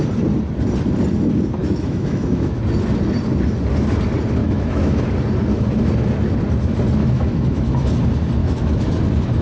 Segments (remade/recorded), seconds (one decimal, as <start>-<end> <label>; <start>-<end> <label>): 0.0-1.6 recorded; 1.6-2.6 remade; 2.6-4.4 recorded; 4.4-5.0 remade; 5.0-7.0 recorded; 7.0-7.9 remade; 7.9-8.4 recorded; 8.4-8.9 remade; 8.9-9.4 recorded